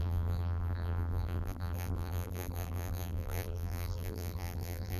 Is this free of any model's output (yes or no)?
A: no